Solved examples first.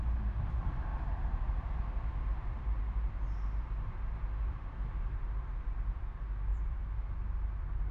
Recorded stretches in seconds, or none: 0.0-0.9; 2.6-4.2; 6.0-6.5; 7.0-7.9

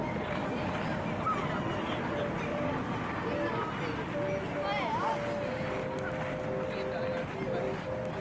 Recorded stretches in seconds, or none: 0.0-2.5; 3.3-8.2

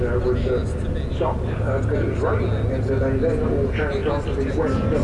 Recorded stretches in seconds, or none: 0.0-5.0